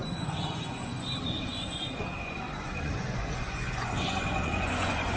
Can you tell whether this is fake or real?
fake